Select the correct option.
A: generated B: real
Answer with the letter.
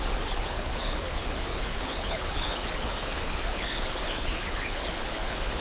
A